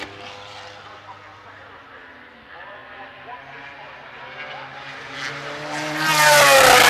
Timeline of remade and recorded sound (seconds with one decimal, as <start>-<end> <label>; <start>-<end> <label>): 0.0-6.9 recorded